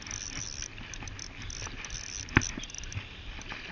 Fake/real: real